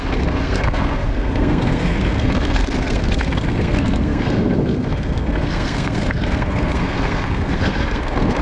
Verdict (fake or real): fake